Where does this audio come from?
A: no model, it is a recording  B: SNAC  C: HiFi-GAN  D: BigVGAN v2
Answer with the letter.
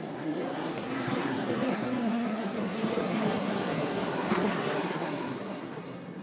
B